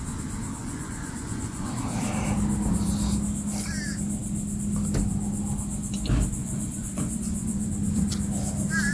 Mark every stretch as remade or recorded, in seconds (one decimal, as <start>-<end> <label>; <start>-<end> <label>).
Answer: 0.0-0.6 recorded; 0.6-1.8 remade; 1.8-6.4 recorded; 6.4-7.7 remade; 7.7-8.9 recorded